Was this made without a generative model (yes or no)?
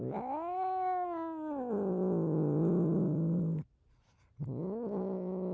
yes